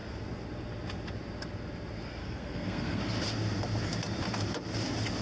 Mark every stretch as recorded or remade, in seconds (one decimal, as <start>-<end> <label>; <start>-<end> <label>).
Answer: 0.0-2.2 recorded; 2.2-3.0 remade; 3.0-5.2 recorded